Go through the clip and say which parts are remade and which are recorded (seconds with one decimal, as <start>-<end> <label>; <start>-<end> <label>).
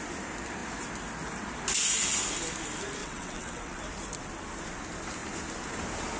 0.0-3.0 recorded; 3.0-3.8 remade; 3.8-6.2 recorded